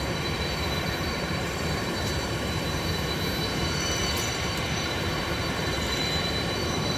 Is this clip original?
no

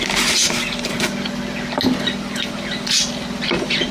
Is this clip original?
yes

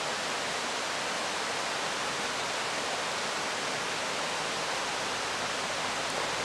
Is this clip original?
yes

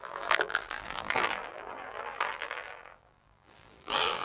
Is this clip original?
no